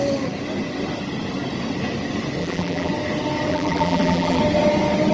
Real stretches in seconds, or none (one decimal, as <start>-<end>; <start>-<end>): 0.0-2.4; 2.9-3.5; 4.4-5.1